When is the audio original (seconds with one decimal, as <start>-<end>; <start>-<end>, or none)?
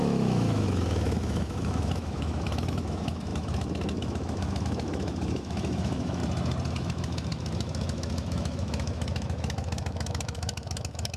6.2-6.7